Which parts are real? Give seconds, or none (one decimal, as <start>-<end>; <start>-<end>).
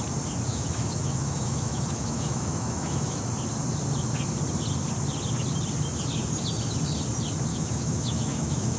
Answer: 0.0-0.5; 3.3-7.5